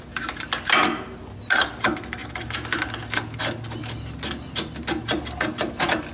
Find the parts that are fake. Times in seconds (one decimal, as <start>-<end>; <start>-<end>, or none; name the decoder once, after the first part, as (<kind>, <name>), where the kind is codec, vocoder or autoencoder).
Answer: none